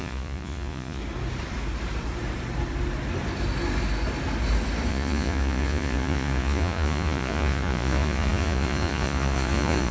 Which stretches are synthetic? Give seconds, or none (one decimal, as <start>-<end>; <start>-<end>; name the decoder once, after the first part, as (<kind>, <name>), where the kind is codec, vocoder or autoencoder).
0.0-1.0 (vocoder, Vocos); 4.9-9.9